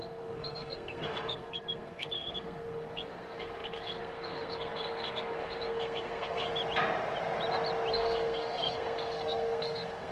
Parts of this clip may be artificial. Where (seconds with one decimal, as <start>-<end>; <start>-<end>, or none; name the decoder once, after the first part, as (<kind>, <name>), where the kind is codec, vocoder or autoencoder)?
0.0-6.5 (codec, SNAC); 7.9-10.1